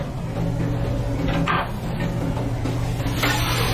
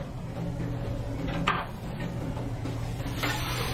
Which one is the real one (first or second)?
first